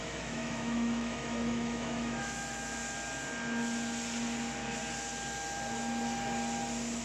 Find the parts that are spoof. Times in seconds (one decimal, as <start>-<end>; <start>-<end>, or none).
0.0-2.8